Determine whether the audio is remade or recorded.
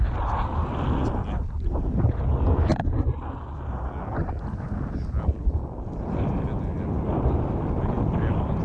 recorded